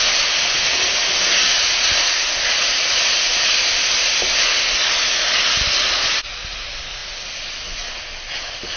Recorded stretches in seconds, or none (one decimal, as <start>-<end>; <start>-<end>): 0.0-8.8